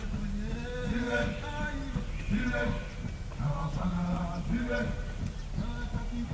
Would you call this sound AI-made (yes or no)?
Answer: no